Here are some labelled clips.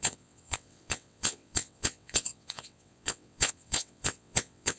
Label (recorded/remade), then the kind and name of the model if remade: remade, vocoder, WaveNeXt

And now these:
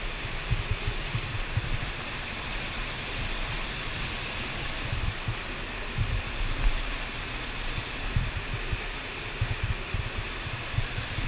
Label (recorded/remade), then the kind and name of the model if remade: recorded